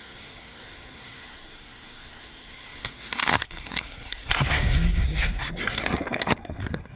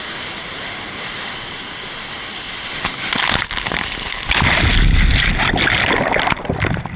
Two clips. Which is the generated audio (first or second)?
first